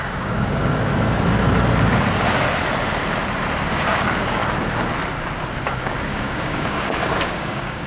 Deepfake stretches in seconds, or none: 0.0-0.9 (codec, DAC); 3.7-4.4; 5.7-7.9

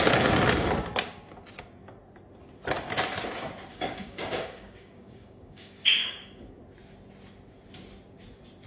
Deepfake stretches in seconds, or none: 3.7-6.6 (codec, DAC)